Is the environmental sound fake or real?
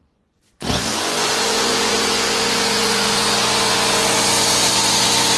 fake